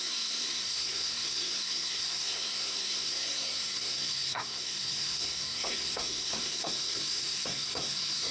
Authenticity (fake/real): fake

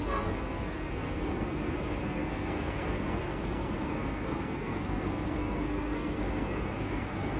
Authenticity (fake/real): fake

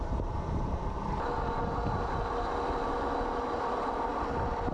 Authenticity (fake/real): real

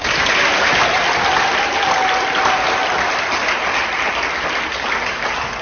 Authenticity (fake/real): real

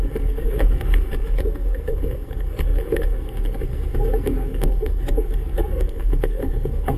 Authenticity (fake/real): fake